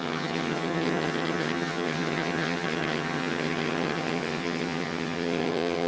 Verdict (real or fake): fake